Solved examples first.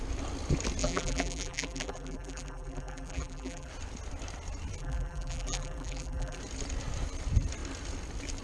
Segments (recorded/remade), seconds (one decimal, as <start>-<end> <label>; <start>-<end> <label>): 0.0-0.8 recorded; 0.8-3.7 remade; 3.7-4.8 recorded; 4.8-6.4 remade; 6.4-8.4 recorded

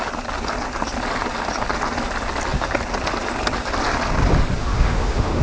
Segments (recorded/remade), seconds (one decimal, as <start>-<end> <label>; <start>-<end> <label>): 0.0-4.6 recorded; 4.6-5.4 remade

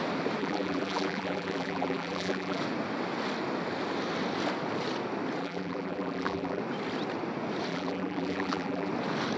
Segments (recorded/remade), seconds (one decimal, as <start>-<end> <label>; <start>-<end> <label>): 0.0-0.4 recorded; 0.4-2.6 remade; 2.6-5.4 recorded; 5.4-6.6 remade; 6.6-7.7 recorded; 7.7-8.9 remade; 8.9-9.4 recorded